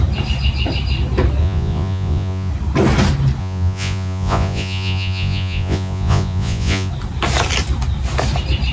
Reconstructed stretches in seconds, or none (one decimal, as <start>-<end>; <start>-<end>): 1.4-2.5; 3.4-6.9